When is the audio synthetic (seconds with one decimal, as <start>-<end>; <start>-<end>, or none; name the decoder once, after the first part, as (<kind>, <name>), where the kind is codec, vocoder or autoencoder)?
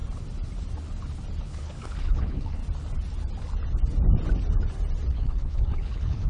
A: 1.4-2.6 (codec, HILCodec); 5.1-6.3